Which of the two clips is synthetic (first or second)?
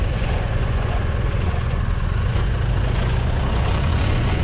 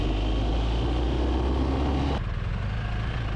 first